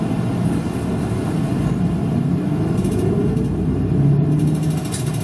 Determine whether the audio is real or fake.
real